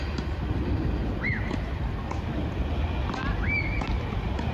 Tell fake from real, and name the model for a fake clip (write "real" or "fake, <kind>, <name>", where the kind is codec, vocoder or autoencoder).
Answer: real